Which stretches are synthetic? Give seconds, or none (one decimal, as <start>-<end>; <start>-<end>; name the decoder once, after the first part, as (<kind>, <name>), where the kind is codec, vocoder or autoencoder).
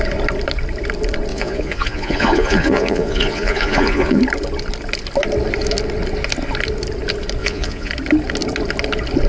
1.3-4.2 (vocoder, Vocos); 7.4-7.9